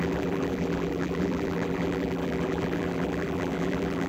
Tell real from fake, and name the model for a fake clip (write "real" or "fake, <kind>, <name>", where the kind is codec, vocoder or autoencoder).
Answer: fake, vocoder, BigVGAN v2